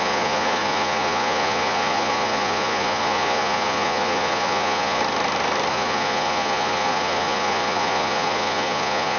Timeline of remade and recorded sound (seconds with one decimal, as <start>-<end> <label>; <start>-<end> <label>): 0.0-5.0 remade; 5.0-5.7 recorded; 5.7-9.2 remade